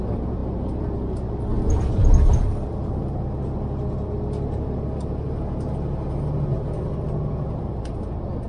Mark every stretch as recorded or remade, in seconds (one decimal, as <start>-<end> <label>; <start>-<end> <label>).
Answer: 0.0-8.5 recorded